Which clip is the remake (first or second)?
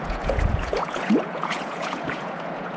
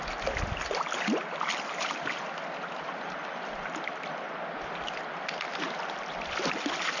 first